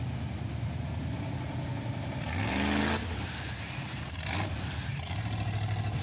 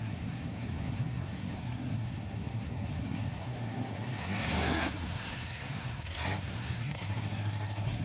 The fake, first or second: second